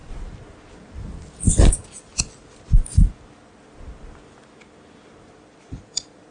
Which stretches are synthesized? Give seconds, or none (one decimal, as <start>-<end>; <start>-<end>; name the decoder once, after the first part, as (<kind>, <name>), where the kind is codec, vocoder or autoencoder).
1.7-2.1 (vocoder, BigVGAN v2); 5.7-6.3